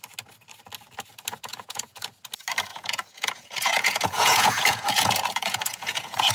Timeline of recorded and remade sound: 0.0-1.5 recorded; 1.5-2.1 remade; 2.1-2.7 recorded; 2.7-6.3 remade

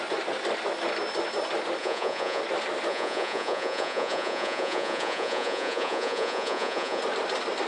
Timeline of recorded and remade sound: 0.0-1.8 recorded; 1.8-2.4 remade; 2.4-2.9 recorded; 2.9-7.0 remade; 7.0-7.7 recorded

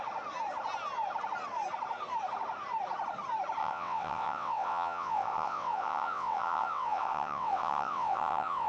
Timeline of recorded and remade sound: 0.0-3.6 recorded; 3.6-8.7 remade

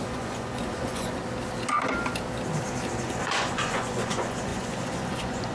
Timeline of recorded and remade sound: 0.0-1.2 remade; 1.2-3.0 recorded; 3.0-5.5 remade

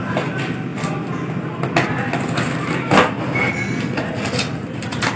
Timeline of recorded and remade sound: 0.0-5.2 recorded

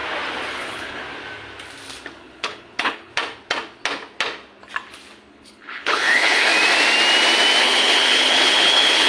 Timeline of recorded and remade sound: 0.0-0.5 recorded; 0.5-1.0 remade; 1.0-2.2 recorded; 2.2-3.1 remade; 3.1-5.3 recorded; 5.3-6.5 remade; 6.5-7.6 recorded; 7.6-9.1 remade

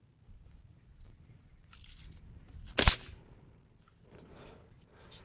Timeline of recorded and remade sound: 0.0-5.2 recorded

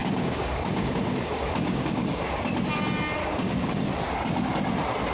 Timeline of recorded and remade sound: 0.0-2.3 remade; 2.3-3.2 recorded; 3.2-3.8 remade; 3.8-5.1 recorded